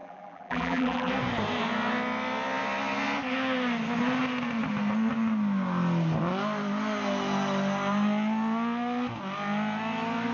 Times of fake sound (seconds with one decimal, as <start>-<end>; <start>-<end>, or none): 0.0-1.1